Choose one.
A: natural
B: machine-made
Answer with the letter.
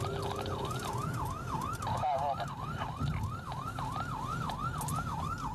A